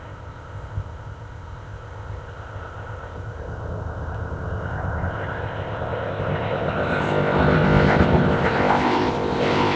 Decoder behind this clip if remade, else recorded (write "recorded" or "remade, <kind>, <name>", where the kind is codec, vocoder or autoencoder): remade, codec, ZipCodec